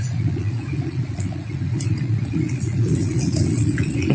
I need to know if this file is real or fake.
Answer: fake